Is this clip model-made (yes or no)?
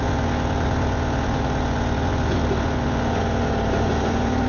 yes